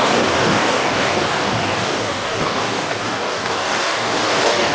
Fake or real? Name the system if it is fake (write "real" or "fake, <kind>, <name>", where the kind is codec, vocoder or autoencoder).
fake, codec, DAC